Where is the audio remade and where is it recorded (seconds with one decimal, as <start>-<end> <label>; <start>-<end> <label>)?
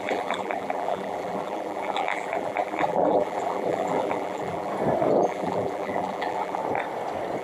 0.0-4.7 remade; 4.7-5.2 recorded; 5.2-6.6 remade; 6.6-7.4 recorded